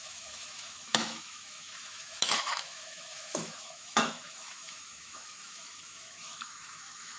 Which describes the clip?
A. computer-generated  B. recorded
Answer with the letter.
A